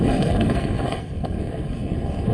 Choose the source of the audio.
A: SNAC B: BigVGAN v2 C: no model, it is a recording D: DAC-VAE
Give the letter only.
A